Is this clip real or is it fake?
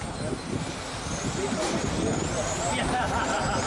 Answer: real